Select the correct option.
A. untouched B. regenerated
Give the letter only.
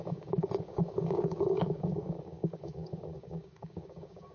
B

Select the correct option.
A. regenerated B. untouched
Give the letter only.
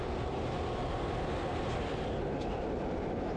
B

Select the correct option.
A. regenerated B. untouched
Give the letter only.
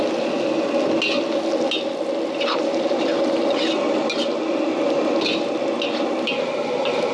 B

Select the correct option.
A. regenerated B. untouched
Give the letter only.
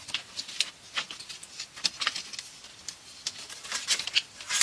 B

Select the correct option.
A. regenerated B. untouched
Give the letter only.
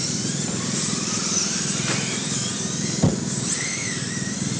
A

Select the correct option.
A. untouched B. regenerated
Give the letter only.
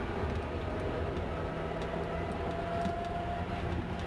A